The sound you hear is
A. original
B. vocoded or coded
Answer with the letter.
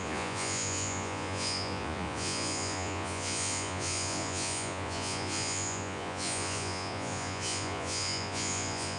B